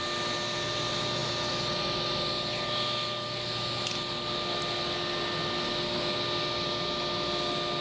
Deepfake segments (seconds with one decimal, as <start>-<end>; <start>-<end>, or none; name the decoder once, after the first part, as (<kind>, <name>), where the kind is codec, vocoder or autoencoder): none